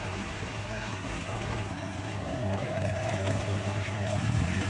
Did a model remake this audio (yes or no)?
yes